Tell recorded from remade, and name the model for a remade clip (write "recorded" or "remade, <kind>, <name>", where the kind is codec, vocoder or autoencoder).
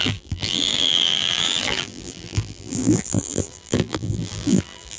remade, vocoder, BigVGAN v2